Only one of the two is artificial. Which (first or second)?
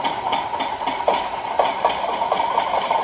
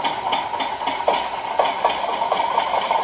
first